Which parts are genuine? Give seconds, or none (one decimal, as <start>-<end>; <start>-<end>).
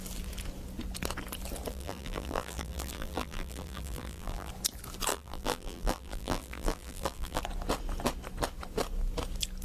0.0-1.7; 4.5-5.1; 7.4-9.6